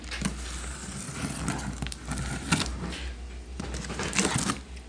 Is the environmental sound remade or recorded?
recorded